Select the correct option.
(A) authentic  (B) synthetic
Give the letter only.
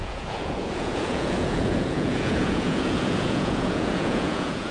B